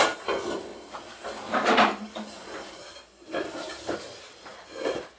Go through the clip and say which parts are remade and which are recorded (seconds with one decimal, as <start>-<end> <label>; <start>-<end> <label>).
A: 0.0-5.2 recorded